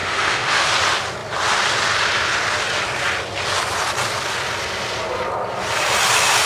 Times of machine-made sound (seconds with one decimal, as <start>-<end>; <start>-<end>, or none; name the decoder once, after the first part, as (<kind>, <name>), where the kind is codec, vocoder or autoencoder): 0.0-0.7 (autoencoder, DAC-VAE)